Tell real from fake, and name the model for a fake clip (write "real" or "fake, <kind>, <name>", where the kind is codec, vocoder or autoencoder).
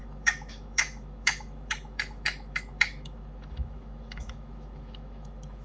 fake, autoencoder, DAC-VAE